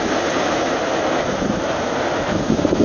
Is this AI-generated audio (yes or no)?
yes